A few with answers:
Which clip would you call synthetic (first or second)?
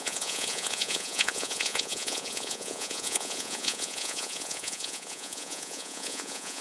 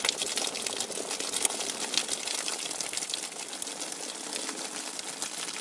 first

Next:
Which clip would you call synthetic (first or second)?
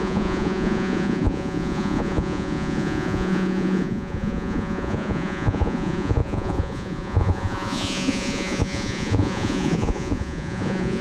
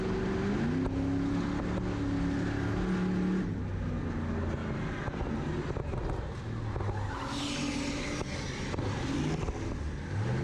first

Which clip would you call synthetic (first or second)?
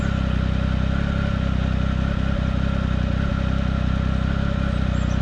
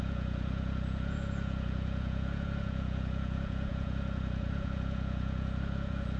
second